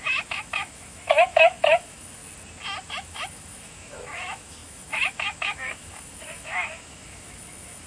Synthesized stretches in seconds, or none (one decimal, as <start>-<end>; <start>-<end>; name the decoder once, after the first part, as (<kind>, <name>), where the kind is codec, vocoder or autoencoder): 0.0-2.2 (autoencoder, DAC-VAE); 2.9-7.9